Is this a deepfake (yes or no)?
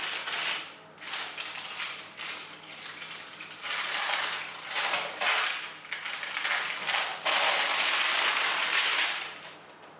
no